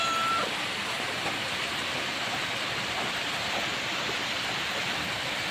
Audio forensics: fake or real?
real